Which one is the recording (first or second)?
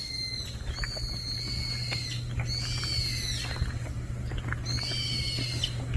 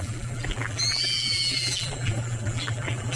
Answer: first